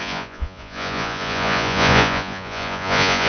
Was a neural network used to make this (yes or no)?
yes